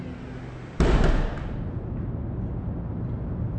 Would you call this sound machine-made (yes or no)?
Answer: no